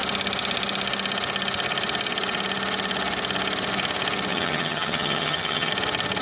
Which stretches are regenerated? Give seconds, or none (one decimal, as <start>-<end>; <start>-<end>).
4.3-5.7